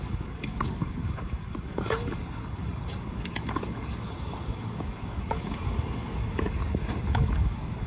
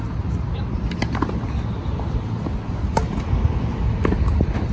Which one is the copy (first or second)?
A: first